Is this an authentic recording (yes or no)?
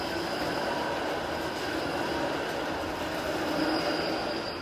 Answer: yes